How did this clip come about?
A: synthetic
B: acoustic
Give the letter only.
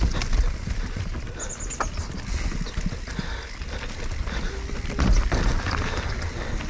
B